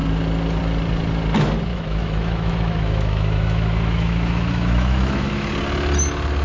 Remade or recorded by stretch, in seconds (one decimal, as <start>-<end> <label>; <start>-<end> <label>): 0.0-1.7 recorded; 1.7-5.5 remade; 5.5-6.4 recorded